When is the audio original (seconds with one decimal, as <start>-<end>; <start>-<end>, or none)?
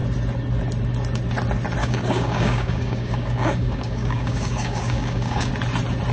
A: 0.0-1.8; 5.5-6.1